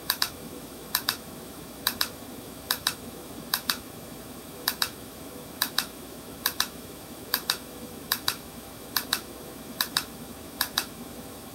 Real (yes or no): no